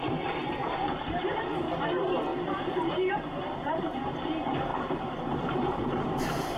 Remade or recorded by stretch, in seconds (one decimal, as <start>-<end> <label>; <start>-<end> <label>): 0.0-2.3 recorded; 2.3-3.8 remade; 3.8-4.7 recorded; 4.7-5.4 remade; 5.4-6.6 recorded